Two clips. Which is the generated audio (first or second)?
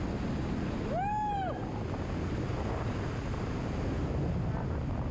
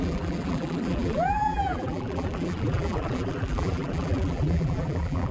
second